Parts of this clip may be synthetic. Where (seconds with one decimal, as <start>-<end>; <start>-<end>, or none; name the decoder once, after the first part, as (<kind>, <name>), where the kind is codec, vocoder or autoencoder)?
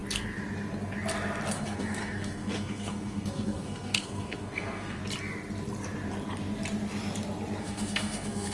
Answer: 1.5-5.0 (codec, SNAC); 7.6-8.5